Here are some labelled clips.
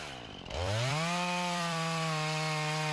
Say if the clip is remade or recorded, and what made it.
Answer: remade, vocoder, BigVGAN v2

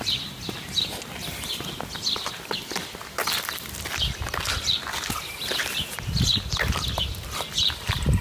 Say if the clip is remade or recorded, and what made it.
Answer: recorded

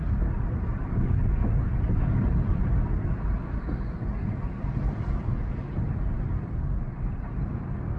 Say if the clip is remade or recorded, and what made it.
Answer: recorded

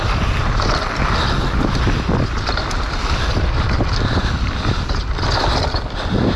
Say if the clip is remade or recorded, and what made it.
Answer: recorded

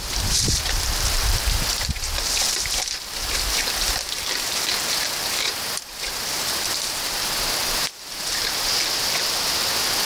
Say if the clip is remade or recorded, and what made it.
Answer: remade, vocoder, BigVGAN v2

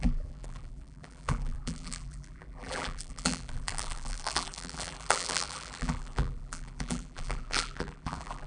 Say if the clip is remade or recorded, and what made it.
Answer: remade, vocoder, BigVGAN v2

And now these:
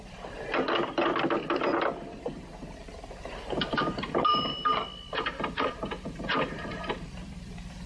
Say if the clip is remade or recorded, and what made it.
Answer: remade, vocoder, BigVGAN v2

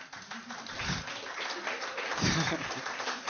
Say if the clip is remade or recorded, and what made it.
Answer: remade, vocoder, BigVGAN v2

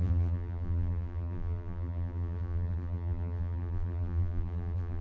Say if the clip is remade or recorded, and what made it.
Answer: remade, vocoder, BigVGAN v2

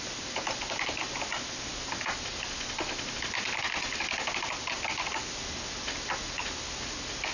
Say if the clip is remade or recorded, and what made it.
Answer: recorded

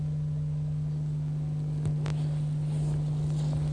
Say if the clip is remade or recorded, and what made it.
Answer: recorded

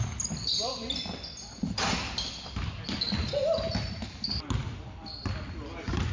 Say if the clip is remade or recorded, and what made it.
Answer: recorded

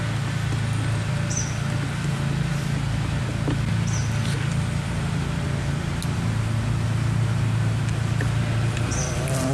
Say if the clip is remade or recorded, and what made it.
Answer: remade, vocoder, BigVGAN v2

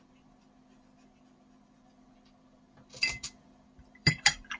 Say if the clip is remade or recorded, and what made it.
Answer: remade, vocoder, BigVGAN v2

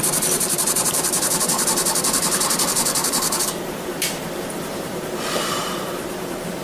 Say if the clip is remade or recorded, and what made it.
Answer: remade, vocoder, BigVGAN v2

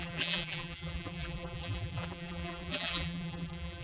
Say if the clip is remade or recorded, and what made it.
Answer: remade, vocoder, BigVGAN v2